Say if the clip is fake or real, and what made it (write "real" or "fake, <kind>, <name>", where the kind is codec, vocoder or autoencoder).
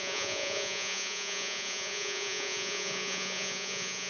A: fake, vocoder, Vocos